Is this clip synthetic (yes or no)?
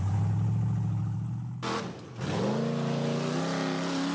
no